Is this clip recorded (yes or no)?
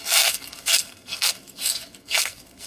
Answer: no